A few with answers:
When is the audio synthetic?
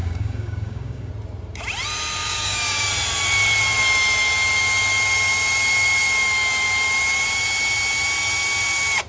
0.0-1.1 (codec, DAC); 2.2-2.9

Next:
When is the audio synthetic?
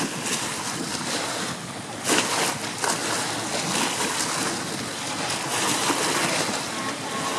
none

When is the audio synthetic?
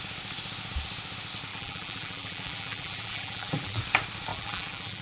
1.5-3.8 (vocoder, BigVGAN v2); 4.3-5.0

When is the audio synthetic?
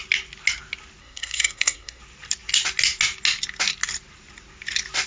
1.0-2.0 (codec, SNAC)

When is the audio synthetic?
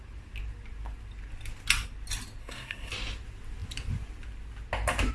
2.4-2.9 (codec, SNAC)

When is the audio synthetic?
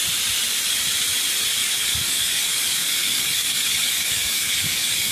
1.6-5.1 (codec, DAC)